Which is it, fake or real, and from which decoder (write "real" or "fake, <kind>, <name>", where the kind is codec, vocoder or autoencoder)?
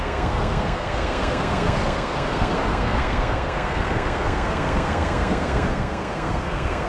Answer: fake, codec, SNAC